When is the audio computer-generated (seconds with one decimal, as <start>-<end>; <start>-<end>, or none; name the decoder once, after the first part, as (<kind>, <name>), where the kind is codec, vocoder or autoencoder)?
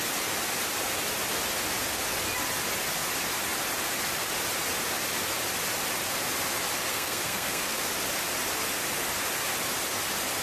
6.9-7.8 (codec, SNAC)